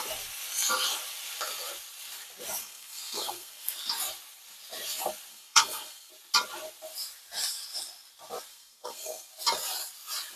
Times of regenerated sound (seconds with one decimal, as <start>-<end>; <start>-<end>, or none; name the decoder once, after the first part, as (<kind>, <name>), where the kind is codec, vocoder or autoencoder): 2.6-3.8 (codec, SNAC); 5.3-6.1; 8.5-9.3